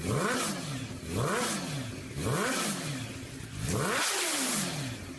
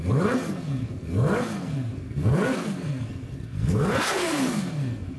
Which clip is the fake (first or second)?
second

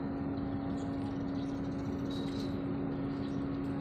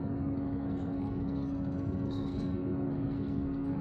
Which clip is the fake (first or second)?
second